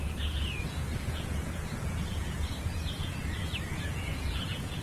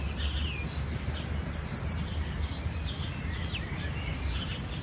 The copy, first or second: first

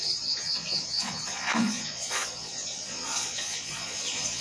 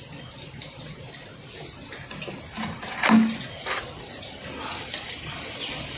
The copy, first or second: first